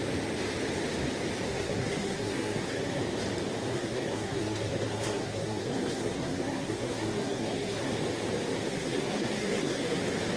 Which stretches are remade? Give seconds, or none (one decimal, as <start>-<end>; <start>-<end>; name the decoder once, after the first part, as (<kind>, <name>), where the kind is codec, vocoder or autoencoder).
1.5-3.0 (codec, SNAC); 3.7-7.9; 8.7-10.0